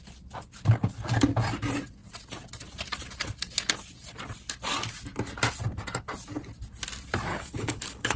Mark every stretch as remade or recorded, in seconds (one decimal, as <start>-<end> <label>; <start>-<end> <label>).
0.0-7.3 recorded; 7.3-8.2 remade